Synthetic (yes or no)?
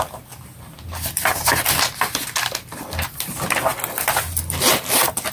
no